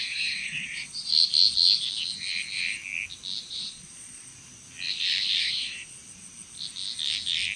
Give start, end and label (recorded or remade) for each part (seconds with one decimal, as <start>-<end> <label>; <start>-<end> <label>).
0.0-1.1 remade; 1.1-3.5 recorded; 3.5-4.3 remade; 4.3-5.4 recorded; 5.4-6.0 remade; 6.0-7.6 recorded